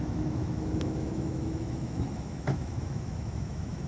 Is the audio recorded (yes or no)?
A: no